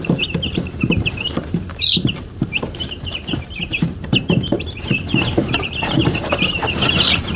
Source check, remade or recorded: remade